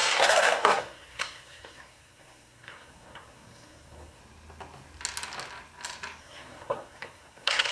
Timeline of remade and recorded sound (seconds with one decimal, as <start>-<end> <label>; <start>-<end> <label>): 0.0-4.2 remade; 4.2-6.2 recorded; 6.2-7.7 remade